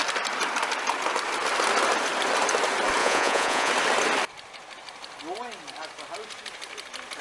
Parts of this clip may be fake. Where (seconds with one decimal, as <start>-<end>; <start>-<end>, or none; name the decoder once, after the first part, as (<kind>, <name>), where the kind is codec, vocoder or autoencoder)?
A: 3.0-3.7 (vocoder, Vocos)